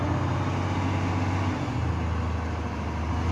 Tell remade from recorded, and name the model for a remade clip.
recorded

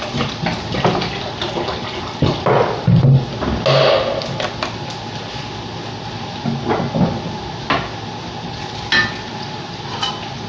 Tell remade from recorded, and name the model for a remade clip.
recorded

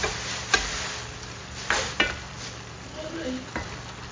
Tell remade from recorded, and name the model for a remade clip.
recorded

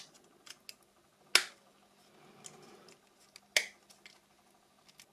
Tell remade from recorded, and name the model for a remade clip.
recorded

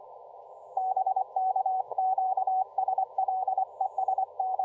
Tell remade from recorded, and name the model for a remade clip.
remade, vocoder, Vocos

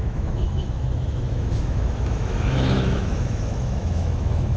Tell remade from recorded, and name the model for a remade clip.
remade, autoencoder, DAC-VAE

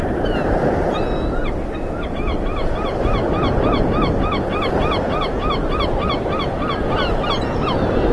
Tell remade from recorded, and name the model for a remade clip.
recorded